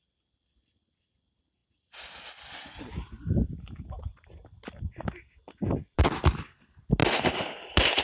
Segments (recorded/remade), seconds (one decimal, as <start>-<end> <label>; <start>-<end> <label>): 0.0-8.0 recorded